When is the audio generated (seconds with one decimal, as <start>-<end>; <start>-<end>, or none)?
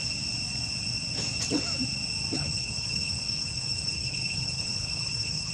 2.4-5.5